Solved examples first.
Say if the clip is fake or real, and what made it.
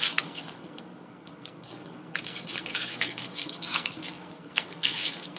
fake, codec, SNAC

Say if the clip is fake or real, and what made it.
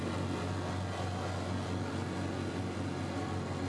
real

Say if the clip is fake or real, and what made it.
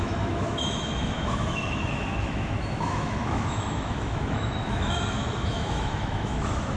fake, autoencoder, DAC-VAE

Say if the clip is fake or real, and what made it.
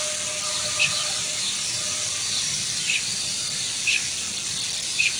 real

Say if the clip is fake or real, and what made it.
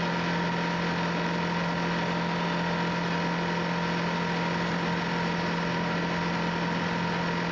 real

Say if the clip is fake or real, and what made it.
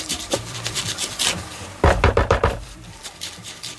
fake, vocoder, BigVGAN v2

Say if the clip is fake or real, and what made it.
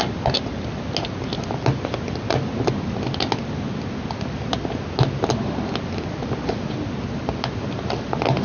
real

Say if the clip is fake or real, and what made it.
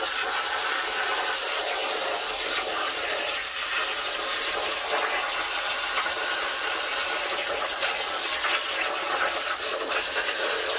real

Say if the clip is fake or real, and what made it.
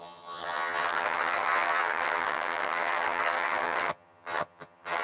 fake, vocoder, HiFi-GAN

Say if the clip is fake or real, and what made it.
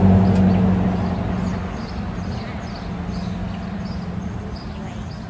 real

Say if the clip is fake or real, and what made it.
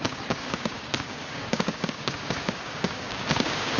fake, codec, DAC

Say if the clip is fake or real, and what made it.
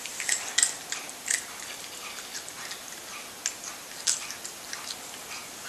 real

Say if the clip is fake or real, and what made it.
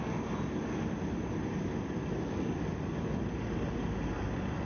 real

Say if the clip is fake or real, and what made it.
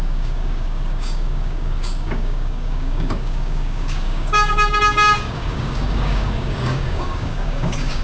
fake, codec, DAC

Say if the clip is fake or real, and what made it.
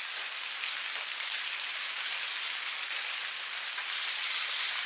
real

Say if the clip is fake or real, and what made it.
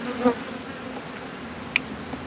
real